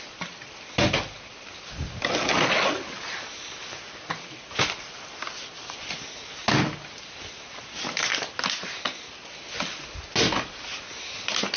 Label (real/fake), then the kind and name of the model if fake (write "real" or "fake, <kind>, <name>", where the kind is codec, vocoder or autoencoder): real